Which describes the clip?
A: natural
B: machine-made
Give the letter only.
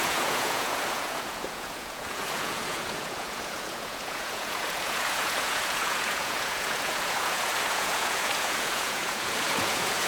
B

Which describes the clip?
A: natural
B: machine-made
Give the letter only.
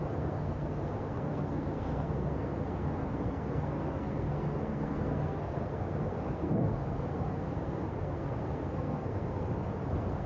B